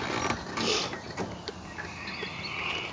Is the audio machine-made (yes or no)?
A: no